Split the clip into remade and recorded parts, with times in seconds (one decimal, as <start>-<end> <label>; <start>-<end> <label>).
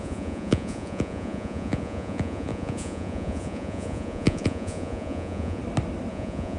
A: 0.0-5.6 remade; 5.6-6.1 recorded; 6.1-6.6 remade